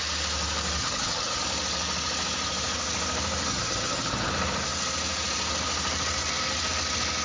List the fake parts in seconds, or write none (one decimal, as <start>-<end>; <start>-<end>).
0.8-1.4; 3.5-4.3